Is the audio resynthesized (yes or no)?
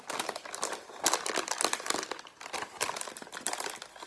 no